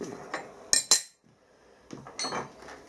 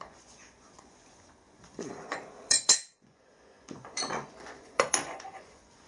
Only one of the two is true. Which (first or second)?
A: first